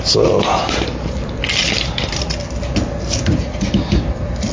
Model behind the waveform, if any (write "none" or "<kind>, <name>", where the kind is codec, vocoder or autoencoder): none